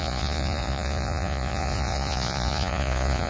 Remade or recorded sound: remade